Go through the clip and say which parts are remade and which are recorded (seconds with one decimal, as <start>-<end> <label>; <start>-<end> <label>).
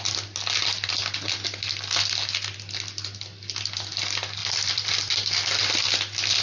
0.0-4.4 recorded; 4.4-5.3 remade; 5.3-6.4 recorded